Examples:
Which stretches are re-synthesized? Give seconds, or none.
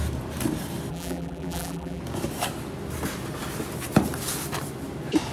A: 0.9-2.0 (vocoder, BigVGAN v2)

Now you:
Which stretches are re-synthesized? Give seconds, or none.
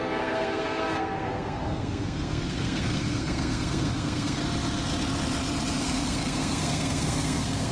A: 0.0-4.4 (codec, SNAC); 5.8-7.7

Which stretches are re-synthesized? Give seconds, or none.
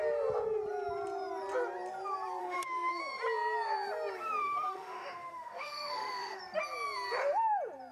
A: 2.4-3.0 (autoencoder, DAC-VAE); 4.4-6.4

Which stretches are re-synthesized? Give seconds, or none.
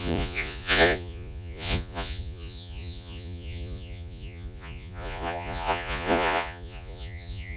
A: 0.0-7.6 (vocoder, Vocos)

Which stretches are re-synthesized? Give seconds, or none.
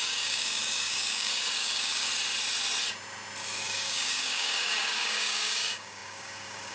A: 0.0-2.1 (codec, DAC); 3.6-6.7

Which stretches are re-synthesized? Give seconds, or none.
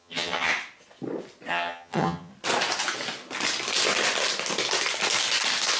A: 0.0-0.5 (vocoder, HiFi-GAN); 1.5-2.3